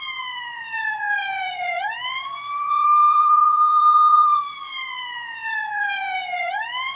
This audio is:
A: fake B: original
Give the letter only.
A